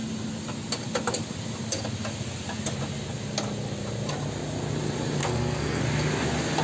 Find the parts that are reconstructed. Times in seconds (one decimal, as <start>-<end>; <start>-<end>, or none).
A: 5.2-5.8